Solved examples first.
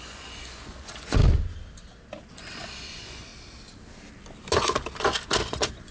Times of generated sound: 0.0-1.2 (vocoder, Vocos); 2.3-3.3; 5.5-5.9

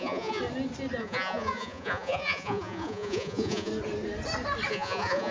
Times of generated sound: 0.0-0.4 (vocoder, Vocos); 1.0-3.7; 4.7-5.3

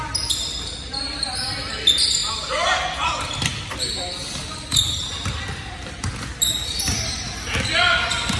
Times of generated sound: none

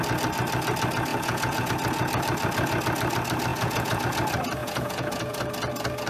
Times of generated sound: 1.1-1.7 (vocoder, Vocos); 3.5-4.0; 4.6-5.4

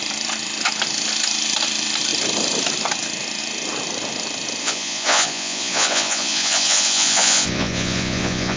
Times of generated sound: 4.6-8.6 (vocoder, Vocos)

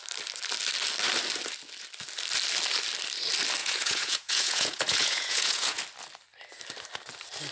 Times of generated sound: 3.6-5.8 (vocoder, Vocos)